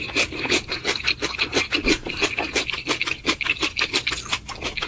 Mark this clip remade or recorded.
recorded